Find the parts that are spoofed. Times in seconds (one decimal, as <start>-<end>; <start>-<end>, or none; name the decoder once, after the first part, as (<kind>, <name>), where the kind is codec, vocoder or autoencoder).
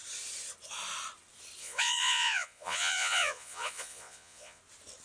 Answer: 1.6-4.6 (vocoder, Vocos)